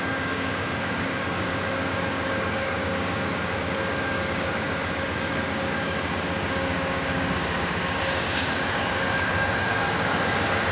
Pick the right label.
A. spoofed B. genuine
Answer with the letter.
A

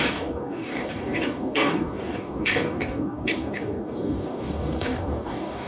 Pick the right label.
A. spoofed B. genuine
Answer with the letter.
A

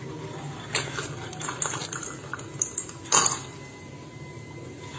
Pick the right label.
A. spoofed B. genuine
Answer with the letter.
B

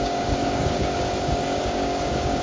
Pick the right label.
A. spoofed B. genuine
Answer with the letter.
A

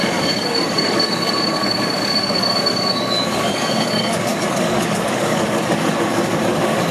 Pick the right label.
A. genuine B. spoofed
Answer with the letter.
B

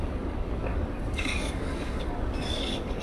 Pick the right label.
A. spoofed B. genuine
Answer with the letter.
A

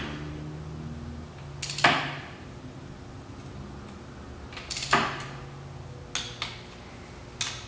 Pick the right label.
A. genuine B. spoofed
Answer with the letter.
A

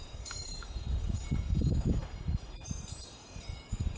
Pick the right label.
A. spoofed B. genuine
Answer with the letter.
A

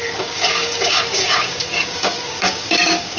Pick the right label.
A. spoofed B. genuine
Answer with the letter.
A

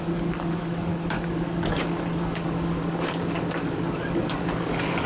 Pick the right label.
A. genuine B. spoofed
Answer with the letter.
B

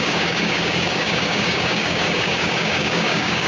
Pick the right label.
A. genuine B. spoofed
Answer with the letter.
B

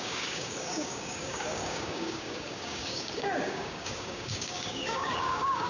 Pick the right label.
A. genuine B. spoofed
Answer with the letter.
B